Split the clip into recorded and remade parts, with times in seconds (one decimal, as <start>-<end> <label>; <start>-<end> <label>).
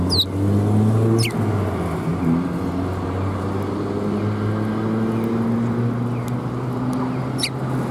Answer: 0.0-7.9 recorded